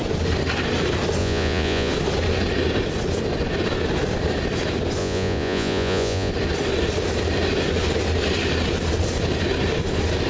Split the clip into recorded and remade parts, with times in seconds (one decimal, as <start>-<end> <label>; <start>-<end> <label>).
0.0-1.2 recorded; 1.2-1.9 remade; 1.9-5.0 recorded; 5.0-6.3 remade; 6.3-10.3 recorded